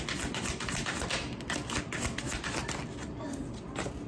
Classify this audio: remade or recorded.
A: recorded